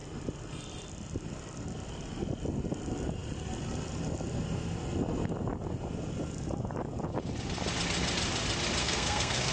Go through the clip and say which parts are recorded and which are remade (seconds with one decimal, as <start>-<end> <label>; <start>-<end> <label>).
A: 0.0-8.8 recorded; 8.8-9.5 remade